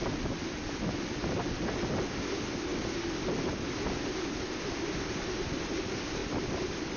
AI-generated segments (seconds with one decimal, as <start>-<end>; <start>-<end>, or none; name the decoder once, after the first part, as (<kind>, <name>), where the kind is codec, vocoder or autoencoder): none